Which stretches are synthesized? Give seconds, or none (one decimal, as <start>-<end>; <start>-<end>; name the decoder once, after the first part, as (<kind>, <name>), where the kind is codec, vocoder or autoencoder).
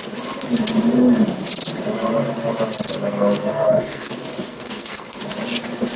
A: 2.9-4.1 (codec, SNAC); 4.5-5.2